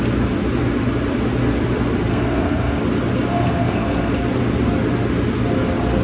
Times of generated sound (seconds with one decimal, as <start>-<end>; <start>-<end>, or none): 2.1-2.8; 3.3-4.1